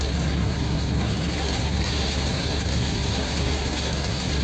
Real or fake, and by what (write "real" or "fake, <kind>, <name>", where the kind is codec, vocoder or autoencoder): fake, codec, SNAC